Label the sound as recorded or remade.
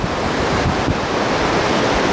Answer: remade